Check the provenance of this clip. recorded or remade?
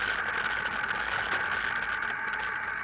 recorded